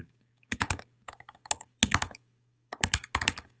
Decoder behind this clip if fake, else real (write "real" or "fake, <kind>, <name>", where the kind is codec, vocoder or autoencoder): fake, codec, DAC